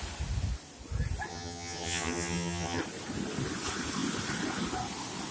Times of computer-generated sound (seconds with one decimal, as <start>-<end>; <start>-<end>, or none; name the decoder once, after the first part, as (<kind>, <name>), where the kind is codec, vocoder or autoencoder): 1.3-2.8 (vocoder, HiFi-GAN)